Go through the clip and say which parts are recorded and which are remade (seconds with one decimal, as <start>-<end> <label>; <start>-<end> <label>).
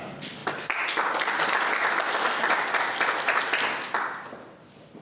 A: 0.0-5.0 recorded